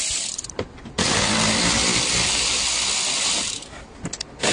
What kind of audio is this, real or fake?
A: real